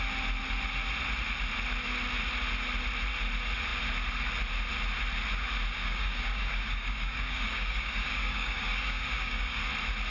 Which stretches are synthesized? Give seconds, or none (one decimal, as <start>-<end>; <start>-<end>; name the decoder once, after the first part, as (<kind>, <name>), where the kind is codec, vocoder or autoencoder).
5.8-9.6 (codec, DAC)